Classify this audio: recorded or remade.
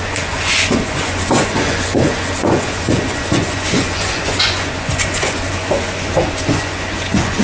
remade